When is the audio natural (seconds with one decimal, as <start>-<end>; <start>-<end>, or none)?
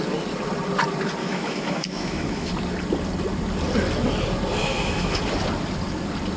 0.0-1.2; 2.5-4.6; 5.2-6.4